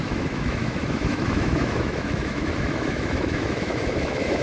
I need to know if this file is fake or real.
fake